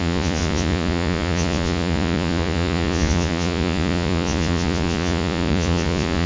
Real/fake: fake